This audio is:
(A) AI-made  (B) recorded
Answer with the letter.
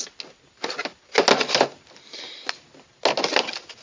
B